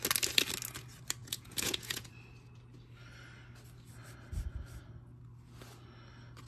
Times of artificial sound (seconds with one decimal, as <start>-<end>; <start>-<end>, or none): 1.2-2.1